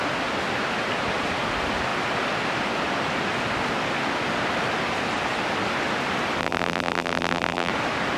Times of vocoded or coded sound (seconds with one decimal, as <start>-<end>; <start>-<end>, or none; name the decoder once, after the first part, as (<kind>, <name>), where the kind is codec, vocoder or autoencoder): 6.4-7.7 (vocoder, BigVGAN v2)